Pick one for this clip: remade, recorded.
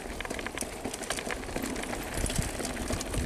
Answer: recorded